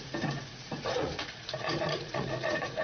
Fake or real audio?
fake